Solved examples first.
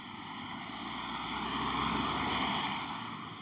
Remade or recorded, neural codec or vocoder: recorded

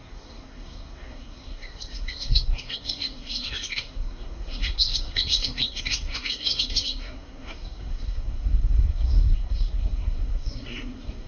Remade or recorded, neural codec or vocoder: remade, codec, SNAC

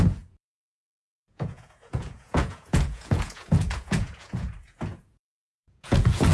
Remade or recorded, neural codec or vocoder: remade, vocoder, Vocos